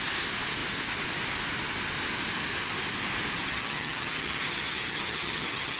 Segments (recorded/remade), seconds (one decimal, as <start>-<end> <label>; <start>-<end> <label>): 0.0-3.5 recorded; 3.5-5.8 remade